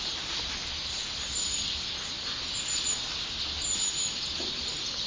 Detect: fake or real real